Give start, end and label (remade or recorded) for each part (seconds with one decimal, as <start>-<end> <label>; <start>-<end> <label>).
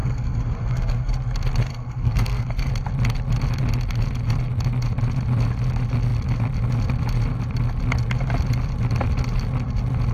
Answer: 0.0-1.1 remade; 1.1-1.7 recorded; 1.7-2.7 remade; 2.7-10.1 recorded